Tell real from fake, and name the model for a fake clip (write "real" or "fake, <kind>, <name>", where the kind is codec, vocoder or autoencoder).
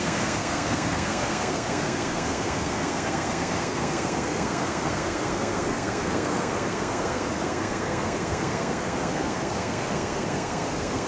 fake, codec, SNAC